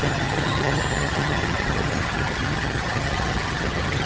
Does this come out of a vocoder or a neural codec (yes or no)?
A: yes